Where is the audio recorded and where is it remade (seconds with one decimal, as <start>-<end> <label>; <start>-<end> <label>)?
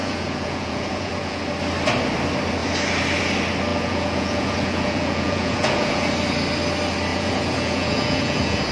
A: 0.0-1.4 remade; 1.4-3.7 recorded; 3.7-6.1 remade; 6.1-7.1 recorded; 7.1-8.7 remade